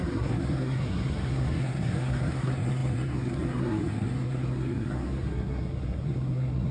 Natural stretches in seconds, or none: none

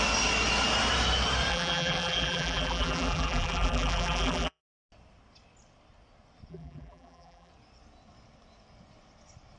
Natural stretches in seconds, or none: 0.0-1.5; 4.6-6.5; 7.5-9.6

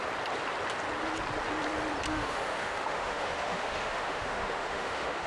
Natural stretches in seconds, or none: 0.0-2.1

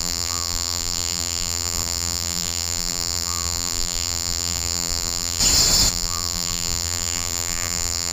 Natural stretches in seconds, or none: 5.4-5.9

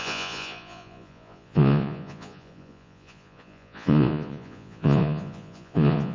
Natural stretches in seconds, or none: none

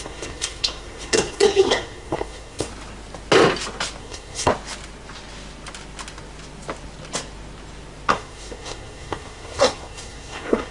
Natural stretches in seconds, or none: 2.7-4.0; 4.5-8.1